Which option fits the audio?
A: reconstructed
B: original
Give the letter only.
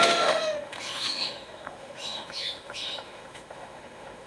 A